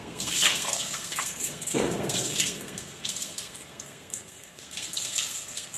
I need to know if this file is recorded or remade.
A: remade